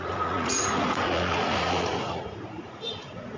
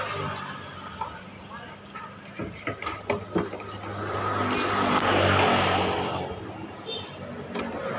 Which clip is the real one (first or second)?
second